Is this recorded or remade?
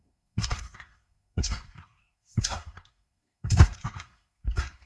remade